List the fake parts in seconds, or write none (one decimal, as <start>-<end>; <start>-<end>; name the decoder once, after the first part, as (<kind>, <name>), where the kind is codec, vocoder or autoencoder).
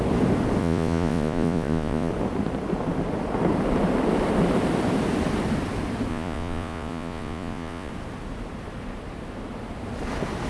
0.6-2.1 (vocoder, Vocos); 6.1-7.9